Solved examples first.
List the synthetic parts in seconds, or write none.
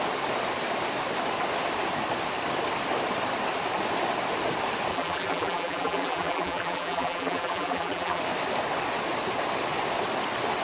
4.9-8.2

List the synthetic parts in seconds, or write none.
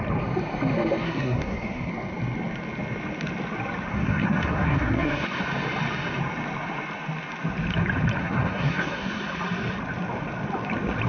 1.0-1.9; 3.9-5.4; 8.2-9.2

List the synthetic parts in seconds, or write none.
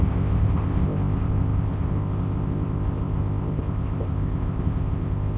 0.0-5.4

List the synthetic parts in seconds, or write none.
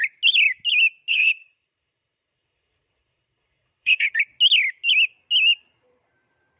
1.1-4.1